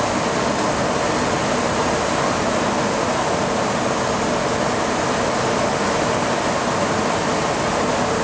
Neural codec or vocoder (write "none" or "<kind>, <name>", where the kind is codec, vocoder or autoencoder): none